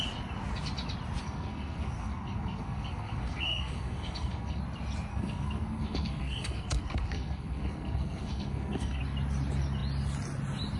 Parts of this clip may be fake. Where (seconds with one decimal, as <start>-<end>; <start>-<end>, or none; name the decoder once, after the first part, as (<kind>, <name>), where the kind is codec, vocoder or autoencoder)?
1.2-4.6 (codec, SNAC); 5.1-9.0